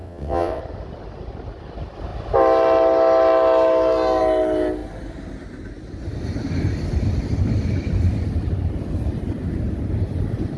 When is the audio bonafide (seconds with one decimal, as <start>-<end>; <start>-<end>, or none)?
0.6-10.6